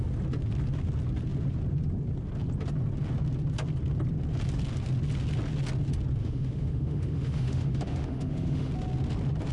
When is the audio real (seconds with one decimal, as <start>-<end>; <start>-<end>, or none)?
0.0-6.2; 8.7-9.5